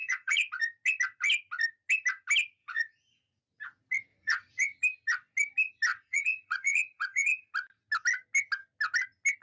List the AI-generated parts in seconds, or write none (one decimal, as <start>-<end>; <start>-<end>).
0.0-0.5; 2.6-3.4; 4.1-4.8; 5.9-7.5